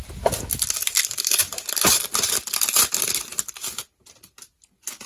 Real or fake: real